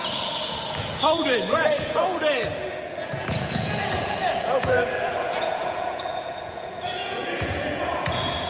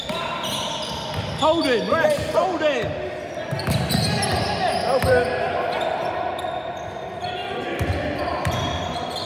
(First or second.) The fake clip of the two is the first